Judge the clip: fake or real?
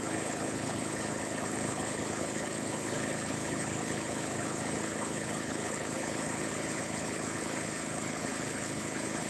fake